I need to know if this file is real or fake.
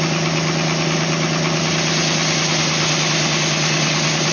real